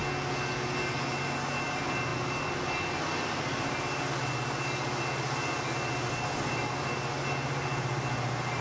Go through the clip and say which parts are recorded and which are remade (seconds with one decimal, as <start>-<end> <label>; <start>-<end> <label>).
0.0-8.6 recorded